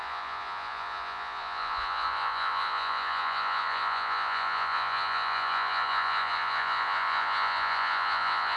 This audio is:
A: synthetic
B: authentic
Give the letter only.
A